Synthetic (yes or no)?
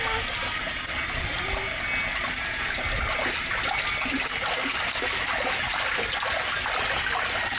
no